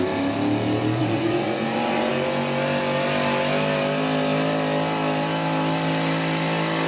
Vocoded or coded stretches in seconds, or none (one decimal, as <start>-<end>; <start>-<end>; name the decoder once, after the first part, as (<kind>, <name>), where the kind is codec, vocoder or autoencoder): 1.0-2.1 (vocoder, Vocos)